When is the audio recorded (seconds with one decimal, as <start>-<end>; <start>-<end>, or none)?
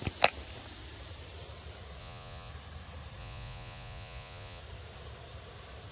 0.0-2.0; 2.5-3.2; 4.6-5.9